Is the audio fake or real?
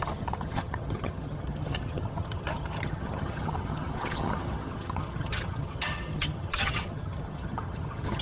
fake